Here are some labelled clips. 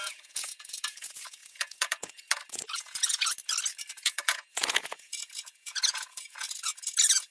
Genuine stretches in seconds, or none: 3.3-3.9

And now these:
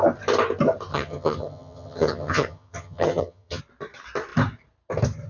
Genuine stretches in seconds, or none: 0.0-0.9; 3.6-5.3

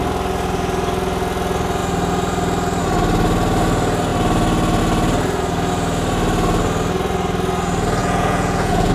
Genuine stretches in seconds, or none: 0.0-8.0

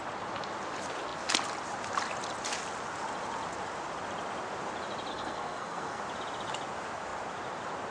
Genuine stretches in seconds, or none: 0.0-5.1; 6.0-7.9

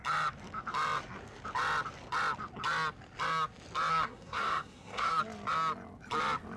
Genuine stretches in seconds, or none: 0.0-3.9; 5.2-6.6